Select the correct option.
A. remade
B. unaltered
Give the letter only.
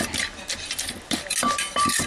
B